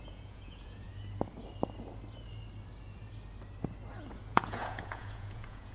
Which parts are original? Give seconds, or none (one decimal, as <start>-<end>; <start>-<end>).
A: 0.9-4.3